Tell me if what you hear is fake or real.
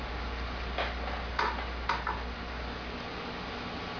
real